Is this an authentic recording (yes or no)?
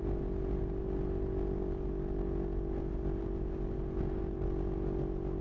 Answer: yes